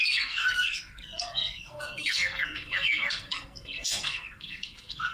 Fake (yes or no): yes